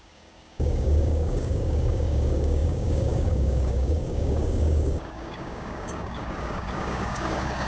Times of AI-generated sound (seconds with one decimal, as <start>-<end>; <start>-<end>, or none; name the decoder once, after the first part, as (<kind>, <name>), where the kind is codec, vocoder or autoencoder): 0.0-7.7 (codec, DAC)